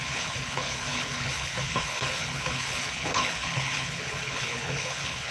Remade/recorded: remade